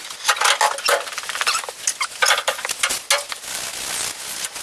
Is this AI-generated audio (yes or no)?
no